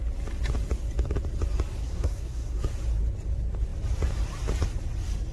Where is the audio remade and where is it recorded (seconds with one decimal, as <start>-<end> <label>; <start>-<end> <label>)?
0.0-1.8 recorded; 1.8-2.6 remade; 2.6-5.3 recorded